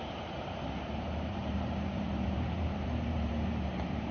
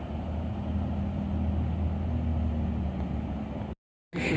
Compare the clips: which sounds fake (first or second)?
first